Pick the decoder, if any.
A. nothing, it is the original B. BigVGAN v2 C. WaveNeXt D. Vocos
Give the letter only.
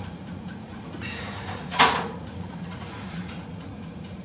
D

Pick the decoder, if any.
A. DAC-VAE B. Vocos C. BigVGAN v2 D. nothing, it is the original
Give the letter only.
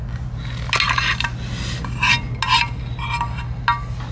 D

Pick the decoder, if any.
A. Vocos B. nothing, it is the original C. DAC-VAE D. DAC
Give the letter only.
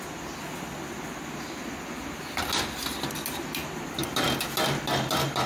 B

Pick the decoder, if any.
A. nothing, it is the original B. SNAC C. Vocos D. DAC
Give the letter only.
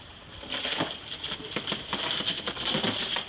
A